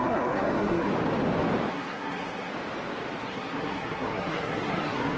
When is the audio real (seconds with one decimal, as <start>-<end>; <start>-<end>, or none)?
0.9-1.7; 2.5-3.2